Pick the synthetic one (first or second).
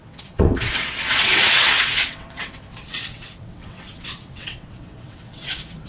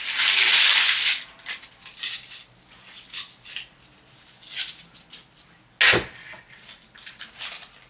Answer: first